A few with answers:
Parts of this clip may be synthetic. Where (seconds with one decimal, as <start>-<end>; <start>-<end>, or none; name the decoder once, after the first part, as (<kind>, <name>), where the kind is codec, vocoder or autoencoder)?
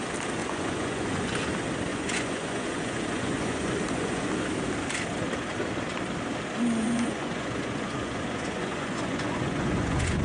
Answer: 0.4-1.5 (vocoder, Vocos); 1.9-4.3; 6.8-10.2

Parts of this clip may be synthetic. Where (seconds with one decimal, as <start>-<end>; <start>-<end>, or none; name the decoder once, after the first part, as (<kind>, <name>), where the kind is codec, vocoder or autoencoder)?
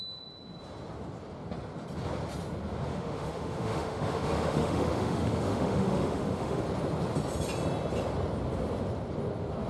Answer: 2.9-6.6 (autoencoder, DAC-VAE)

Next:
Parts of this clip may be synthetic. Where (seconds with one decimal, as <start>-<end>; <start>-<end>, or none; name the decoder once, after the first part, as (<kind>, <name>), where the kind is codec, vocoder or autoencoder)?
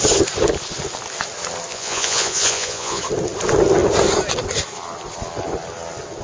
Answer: 1.7-3.0 (vocoder, Vocos)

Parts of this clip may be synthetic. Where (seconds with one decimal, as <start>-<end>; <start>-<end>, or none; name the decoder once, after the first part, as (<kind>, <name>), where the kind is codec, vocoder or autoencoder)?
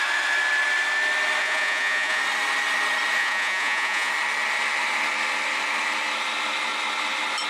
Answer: 1.4-2.2 (vocoder, Vocos); 3.2-4.1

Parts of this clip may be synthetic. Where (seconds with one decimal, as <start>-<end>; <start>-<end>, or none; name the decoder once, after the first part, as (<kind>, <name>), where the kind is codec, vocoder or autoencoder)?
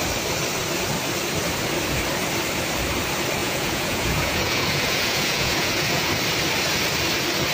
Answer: 3.4-6.1 (vocoder, Vocos)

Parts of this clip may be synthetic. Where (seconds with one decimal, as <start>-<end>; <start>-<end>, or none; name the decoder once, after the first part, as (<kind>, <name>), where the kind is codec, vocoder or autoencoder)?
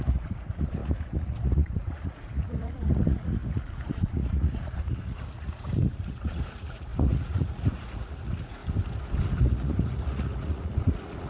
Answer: 0.0-8.6 (vocoder, Vocos); 9.4-11.3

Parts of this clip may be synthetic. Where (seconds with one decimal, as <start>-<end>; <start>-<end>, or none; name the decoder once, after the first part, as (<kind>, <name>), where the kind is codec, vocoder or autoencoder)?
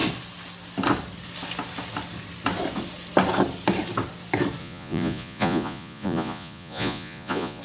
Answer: 4.6-7.6 (vocoder, Vocos)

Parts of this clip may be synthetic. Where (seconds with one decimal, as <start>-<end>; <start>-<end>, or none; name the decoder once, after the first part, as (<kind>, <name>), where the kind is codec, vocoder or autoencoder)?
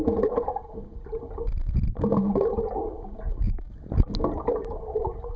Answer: none